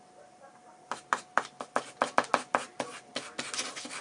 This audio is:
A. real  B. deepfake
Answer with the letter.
A